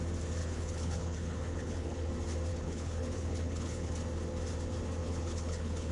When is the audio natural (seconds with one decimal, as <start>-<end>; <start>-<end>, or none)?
0.0-0.4; 2.1-2.5; 3.9-5.0